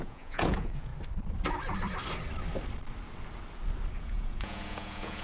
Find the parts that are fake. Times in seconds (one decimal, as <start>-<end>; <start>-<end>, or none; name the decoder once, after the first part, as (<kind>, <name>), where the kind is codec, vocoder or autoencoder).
0.0-0.9 (vocoder, Vocos); 4.0-5.2